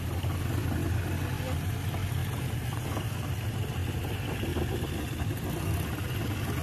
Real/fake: real